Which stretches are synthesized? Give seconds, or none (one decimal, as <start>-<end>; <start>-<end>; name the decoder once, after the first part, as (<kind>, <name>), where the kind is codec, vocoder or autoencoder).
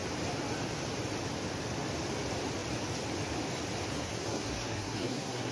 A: 3.9-5.5 (codec, SNAC)